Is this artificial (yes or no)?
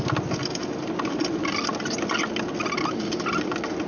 no